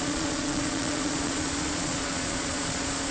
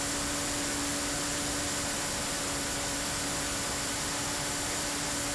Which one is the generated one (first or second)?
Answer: first